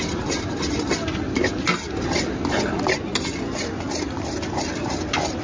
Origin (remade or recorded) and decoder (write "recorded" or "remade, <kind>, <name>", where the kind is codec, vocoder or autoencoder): recorded